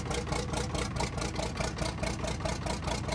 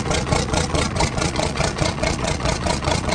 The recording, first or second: first